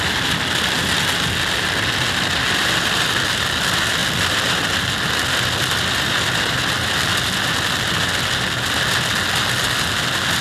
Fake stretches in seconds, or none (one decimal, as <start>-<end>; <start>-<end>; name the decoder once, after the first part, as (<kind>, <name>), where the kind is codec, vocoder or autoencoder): none